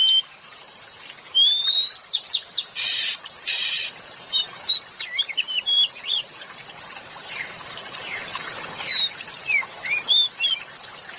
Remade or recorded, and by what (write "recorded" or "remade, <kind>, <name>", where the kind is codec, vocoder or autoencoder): remade, vocoder, BigVGAN v2